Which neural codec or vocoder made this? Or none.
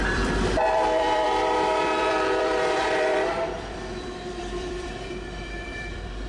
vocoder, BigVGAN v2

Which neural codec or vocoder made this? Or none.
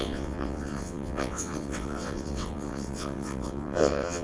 vocoder, WaveNeXt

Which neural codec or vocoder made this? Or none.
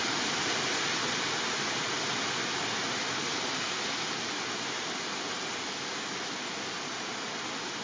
none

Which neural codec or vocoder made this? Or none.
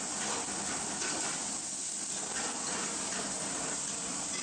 none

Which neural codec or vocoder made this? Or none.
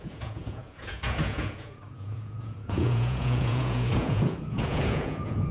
vocoder, Vocos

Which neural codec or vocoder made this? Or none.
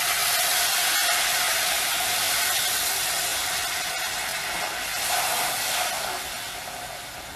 none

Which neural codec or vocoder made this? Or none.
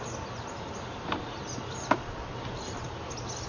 none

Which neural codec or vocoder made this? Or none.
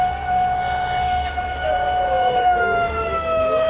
autoencoder, DAC-VAE